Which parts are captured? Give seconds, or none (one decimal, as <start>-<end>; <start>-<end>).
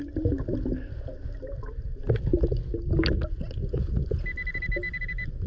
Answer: 0.0-5.5